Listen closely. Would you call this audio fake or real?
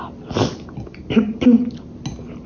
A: real